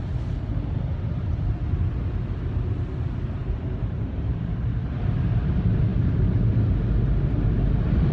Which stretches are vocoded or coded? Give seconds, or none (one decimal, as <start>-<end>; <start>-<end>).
0.5-1.7; 3.4-4.6